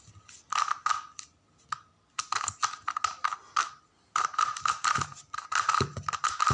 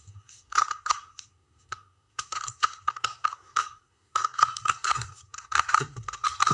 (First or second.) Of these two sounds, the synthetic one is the second